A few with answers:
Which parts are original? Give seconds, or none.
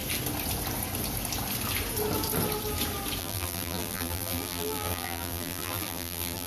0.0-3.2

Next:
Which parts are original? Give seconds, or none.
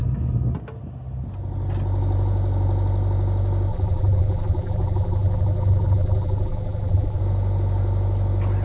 0.0-3.7; 7.2-8.6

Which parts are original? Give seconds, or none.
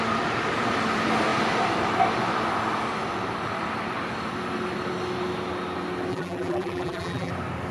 0.0-6.1; 7.3-7.7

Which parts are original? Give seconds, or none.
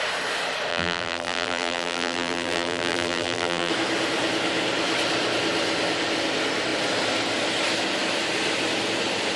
0.0-0.7; 3.7-9.4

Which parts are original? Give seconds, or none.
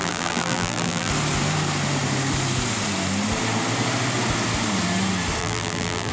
1.1-5.4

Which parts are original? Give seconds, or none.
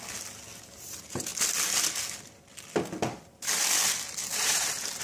0.0-4.2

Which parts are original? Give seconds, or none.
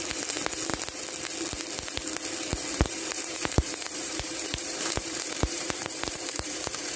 0.0-2.7